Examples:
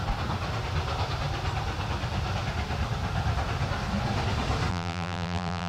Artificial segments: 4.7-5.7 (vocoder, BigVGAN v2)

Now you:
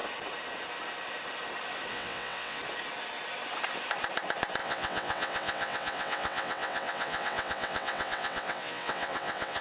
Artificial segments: 1.9-2.6 (vocoder, WaveNeXt); 4.6-9.6

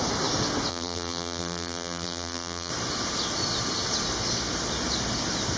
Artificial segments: 0.7-2.7 (vocoder, BigVGAN v2)

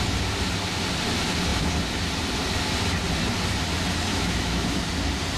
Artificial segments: 4.1-4.8 (autoencoder, DAC-VAE)

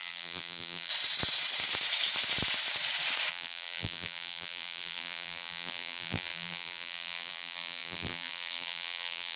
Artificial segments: 0.0-0.9 (vocoder, BigVGAN v2); 3.3-9.4